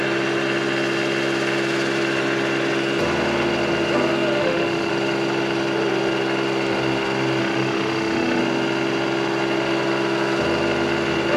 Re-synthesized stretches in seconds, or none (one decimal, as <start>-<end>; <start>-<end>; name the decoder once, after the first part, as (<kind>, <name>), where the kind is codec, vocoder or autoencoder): 4.4-4.9 (autoencoder, DAC-VAE); 7.4-8.4